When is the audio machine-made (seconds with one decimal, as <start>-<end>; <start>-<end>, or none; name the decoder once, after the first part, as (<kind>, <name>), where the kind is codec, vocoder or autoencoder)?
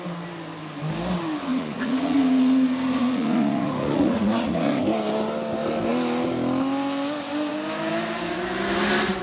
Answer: 1.5-4.8 (vocoder, Vocos)